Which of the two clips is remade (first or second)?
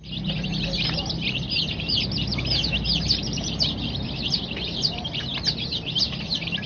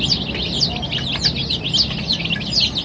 first